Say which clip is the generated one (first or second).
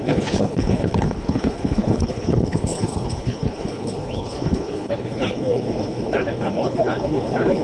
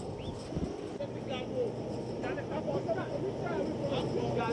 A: first